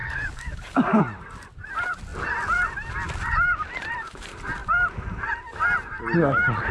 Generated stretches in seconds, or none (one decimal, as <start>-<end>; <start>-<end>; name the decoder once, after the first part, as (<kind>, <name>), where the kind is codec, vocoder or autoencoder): 0.0-1.0 (codec, DAC)